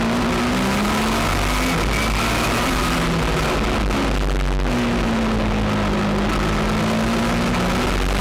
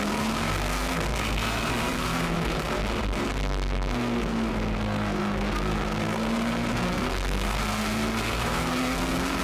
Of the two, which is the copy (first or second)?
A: second